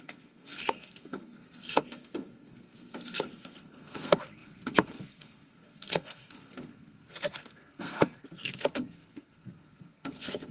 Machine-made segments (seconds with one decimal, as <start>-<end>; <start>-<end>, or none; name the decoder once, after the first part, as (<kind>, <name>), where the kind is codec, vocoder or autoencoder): 0.0-10.5 (codec, SNAC)